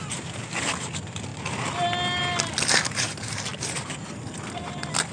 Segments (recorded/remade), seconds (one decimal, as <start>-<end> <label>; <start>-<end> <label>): 0.0-5.1 recorded